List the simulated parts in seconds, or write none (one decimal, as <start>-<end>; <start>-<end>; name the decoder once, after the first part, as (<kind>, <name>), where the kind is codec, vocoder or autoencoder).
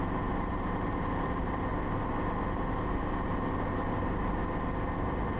0.0-1.7 (vocoder, BigVGAN v2); 3.7-4.4; 5.0-5.4